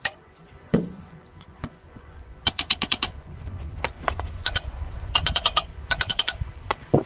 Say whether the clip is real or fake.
fake